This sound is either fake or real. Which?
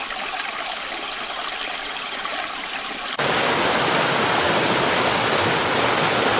real